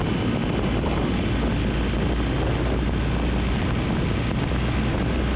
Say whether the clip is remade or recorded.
recorded